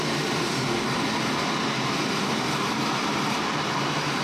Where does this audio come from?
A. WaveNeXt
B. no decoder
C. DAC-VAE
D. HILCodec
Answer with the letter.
B